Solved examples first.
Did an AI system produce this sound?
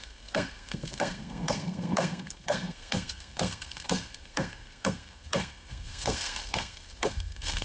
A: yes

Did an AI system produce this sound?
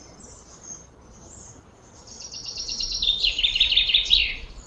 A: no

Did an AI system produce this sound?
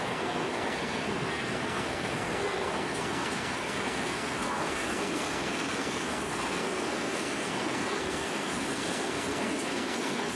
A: yes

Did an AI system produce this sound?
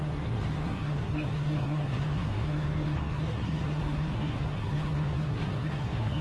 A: yes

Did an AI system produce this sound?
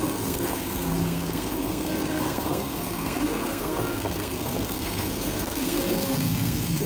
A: yes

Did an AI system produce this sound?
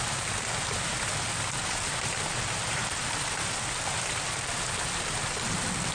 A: no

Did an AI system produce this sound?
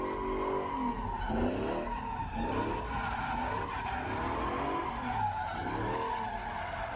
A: no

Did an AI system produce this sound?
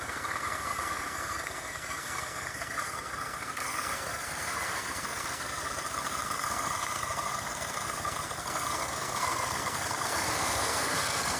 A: yes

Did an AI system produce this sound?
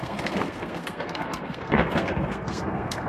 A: yes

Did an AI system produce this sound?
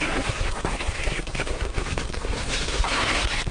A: yes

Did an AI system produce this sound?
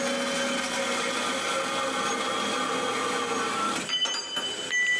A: no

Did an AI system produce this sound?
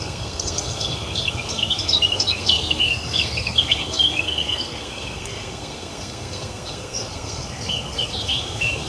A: yes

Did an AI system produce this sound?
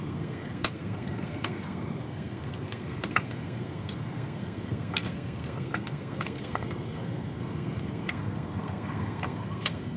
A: yes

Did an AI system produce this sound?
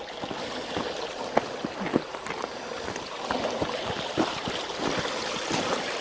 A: no